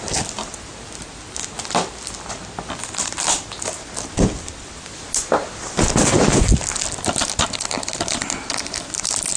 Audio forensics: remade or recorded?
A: recorded